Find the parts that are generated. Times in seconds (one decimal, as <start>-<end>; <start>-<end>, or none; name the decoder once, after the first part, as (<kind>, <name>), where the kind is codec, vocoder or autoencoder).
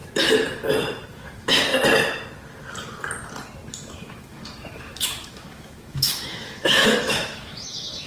1.1-1.7 (autoencoder, DAC-VAE); 3.7-8.1